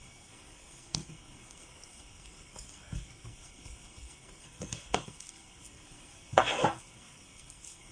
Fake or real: fake